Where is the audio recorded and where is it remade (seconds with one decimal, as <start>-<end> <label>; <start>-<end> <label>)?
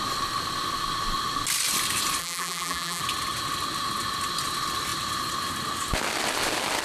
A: 0.0-2.2 recorded; 2.2-3.0 remade; 3.0-6.8 recorded